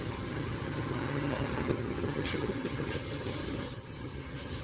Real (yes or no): no